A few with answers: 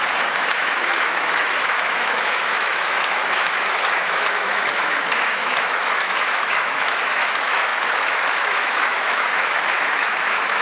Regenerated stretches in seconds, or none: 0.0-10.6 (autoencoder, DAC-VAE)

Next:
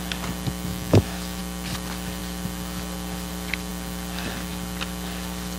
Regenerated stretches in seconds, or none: 0.7-1.4 (autoencoder, DAC-VAE)

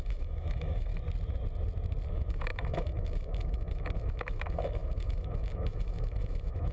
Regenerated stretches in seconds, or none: 0.0-0.9 (autoencoder, DAC-VAE); 2.1-6.7

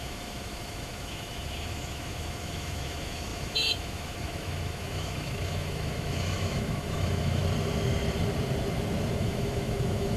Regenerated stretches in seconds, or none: 0.0-7.4 (autoencoder, DAC-VAE); 9.1-10.2